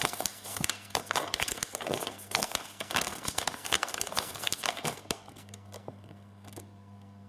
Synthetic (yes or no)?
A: yes